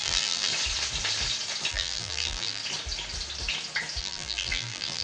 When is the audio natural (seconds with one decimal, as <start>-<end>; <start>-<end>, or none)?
0.5-1.7; 2.6-4.0